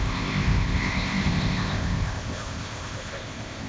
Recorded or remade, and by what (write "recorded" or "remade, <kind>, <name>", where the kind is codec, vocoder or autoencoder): remade, codec, ZipCodec